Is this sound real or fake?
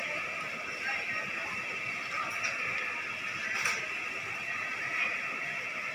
real